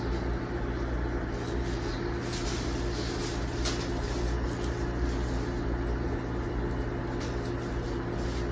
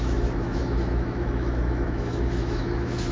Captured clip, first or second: first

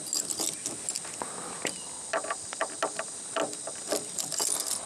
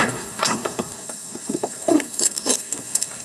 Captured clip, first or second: first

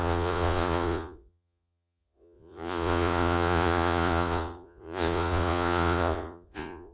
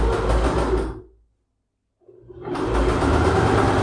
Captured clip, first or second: second